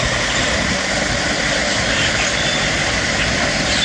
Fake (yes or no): no